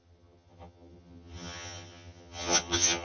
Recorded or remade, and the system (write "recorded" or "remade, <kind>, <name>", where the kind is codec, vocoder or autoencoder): remade, vocoder, HiFi-GAN